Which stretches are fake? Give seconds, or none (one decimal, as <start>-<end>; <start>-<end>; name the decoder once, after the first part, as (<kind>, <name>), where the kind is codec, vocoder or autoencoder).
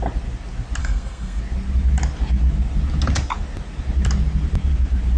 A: 0.8-1.4 (codec, SNAC)